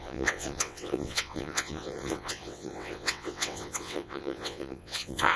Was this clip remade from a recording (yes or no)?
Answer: yes